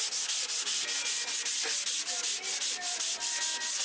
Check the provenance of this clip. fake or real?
real